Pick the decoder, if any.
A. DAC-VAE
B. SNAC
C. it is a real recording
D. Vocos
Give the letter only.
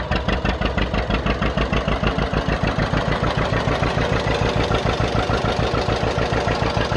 C